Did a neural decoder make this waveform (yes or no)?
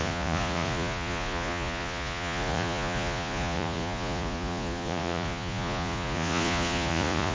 yes